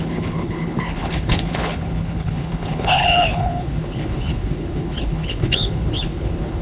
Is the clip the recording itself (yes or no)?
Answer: no